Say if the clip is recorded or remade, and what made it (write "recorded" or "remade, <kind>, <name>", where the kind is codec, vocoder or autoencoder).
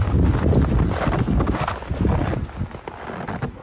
recorded